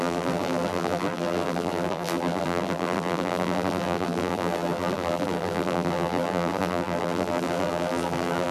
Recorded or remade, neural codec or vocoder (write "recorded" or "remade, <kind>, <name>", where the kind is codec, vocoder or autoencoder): remade, vocoder, BigVGAN v2